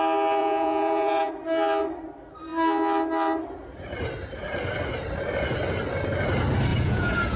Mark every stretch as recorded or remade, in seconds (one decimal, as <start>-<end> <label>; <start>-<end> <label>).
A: 0.0-0.4 recorded; 0.4-1.3 remade; 1.3-6.7 recorded; 6.7-7.4 remade